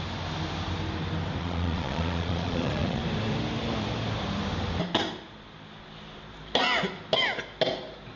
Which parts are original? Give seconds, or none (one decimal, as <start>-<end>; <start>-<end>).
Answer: 0.0-1.4; 3.0-8.2